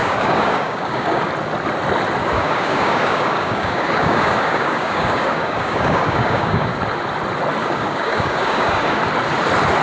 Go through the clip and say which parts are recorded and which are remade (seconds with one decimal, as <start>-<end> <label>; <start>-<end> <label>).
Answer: 0.0-1.3 remade; 1.3-2.2 recorded; 2.2-6.7 remade; 6.7-7.6 recorded; 7.6-9.0 remade; 9.0-9.8 recorded